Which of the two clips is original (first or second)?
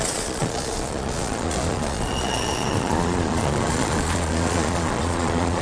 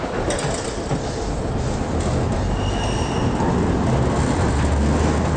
second